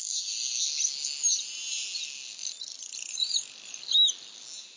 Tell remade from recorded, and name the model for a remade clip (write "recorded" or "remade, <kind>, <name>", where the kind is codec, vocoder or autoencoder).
recorded